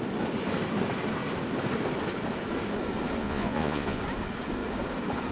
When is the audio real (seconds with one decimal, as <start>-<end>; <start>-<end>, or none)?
0.0-3.2; 4.0-5.3